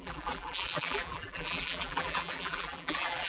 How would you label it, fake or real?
fake